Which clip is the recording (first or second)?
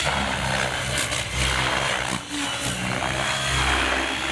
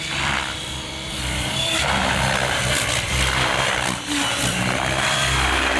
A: first